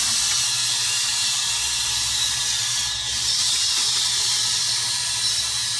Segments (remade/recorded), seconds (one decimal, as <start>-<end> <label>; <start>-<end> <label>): 0.0-5.8 recorded